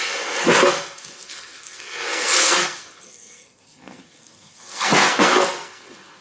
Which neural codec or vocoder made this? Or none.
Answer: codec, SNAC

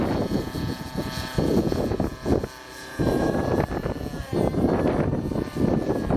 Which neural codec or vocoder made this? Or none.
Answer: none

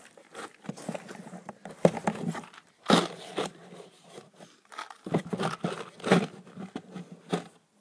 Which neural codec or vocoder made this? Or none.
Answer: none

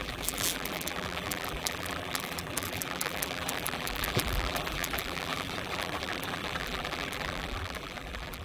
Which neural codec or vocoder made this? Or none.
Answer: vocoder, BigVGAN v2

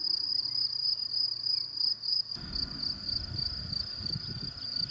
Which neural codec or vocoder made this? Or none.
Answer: none